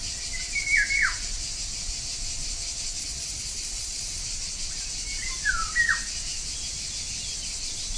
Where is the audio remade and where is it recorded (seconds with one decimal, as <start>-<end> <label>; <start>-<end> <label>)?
0.0-3.0 recorded; 3.0-4.2 remade; 4.2-8.0 recorded